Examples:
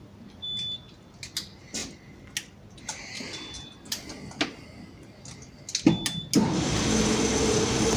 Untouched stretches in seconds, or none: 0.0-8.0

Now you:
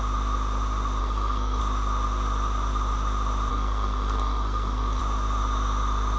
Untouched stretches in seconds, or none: 0.0-1.0; 1.6-3.5; 5.0-6.2

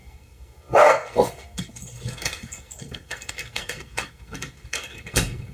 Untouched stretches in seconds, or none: none

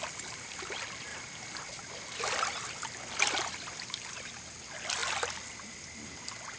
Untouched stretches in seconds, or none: 0.0-6.6